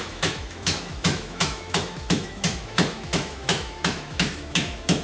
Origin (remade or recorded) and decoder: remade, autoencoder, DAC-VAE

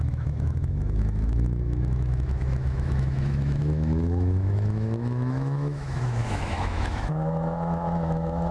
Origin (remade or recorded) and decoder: remade, autoencoder, DAC-VAE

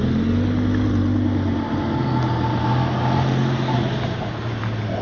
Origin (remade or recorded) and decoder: recorded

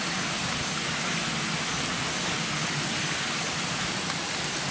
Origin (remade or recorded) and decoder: recorded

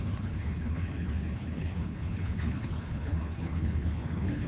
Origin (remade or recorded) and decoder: remade, codec, HILCodec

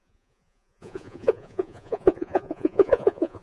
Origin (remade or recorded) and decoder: remade, vocoder, Vocos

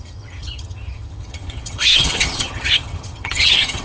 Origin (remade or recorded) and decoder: remade, vocoder, HiFi-GAN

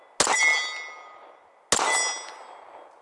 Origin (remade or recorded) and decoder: recorded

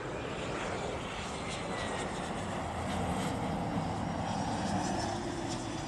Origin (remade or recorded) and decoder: recorded